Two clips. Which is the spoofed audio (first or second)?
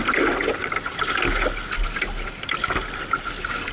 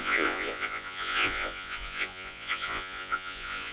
second